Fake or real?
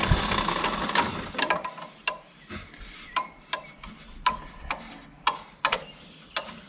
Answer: real